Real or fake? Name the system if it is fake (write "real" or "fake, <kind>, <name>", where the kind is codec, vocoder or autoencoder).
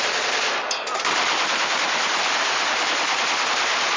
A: fake, vocoder, BigVGAN v2